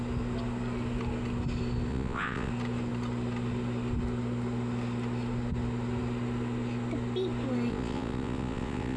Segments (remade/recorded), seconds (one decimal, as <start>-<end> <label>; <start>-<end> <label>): 0.0-1.9 recorded; 1.9-2.5 remade; 2.5-7.7 recorded; 7.7-9.0 remade